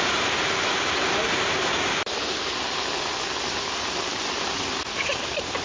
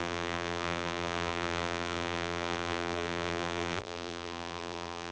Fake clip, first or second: second